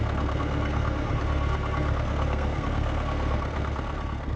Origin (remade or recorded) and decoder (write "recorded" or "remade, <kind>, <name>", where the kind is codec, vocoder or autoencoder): remade, codec, SNAC